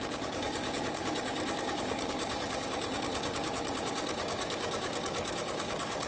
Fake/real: fake